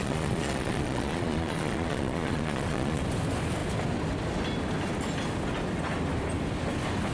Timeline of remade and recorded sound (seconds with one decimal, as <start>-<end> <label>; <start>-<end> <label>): 0.0-3.0 remade; 3.0-7.1 recorded